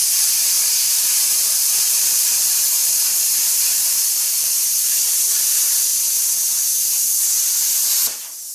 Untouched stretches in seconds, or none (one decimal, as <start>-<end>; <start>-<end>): 2.8-3.3; 5.9-7.8